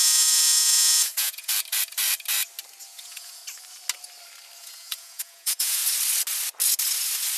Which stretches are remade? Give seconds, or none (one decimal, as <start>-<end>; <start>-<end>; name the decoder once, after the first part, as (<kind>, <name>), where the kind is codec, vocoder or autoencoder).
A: 0.0-1.5 (vocoder, Vocos); 2.8-3.4; 4.6-5.8